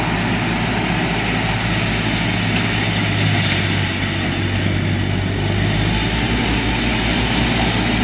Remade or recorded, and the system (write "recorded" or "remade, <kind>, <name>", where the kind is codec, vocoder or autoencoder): recorded